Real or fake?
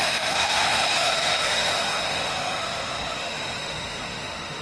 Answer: fake